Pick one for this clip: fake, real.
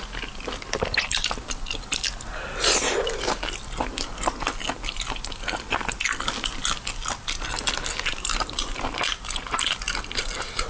real